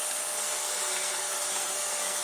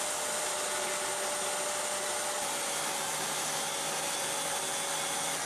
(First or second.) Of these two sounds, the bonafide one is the second